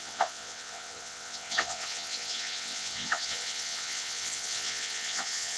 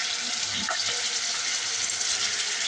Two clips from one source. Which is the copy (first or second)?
first